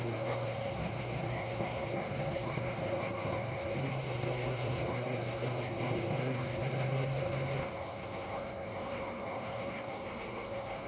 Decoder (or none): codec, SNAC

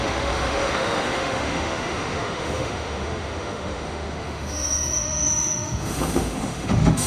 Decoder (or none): autoencoder, DAC-VAE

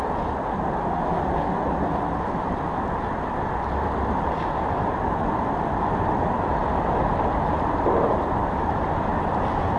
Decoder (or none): none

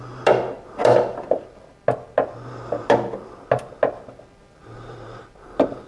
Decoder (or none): none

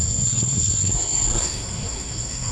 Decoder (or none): codec, SNAC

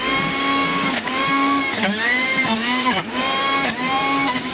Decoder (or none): codec, DAC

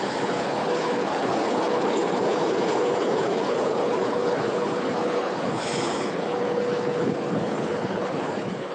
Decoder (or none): codec, HILCodec